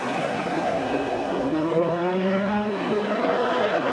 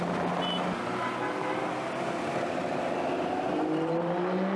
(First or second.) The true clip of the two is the second